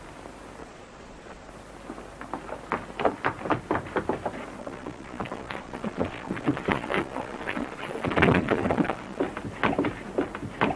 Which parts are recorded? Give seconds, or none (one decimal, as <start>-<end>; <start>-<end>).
0.0-0.6; 1.5-4.6; 9.2-10.8